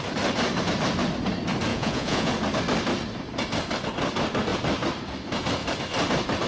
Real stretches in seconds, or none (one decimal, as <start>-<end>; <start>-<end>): 0.0-1.7; 2.3-6.5